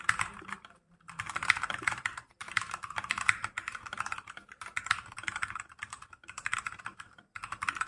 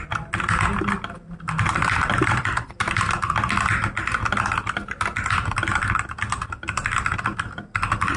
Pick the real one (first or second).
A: second